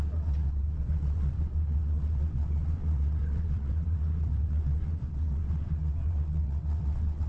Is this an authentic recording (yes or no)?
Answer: no